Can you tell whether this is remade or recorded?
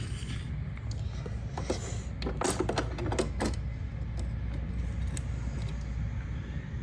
recorded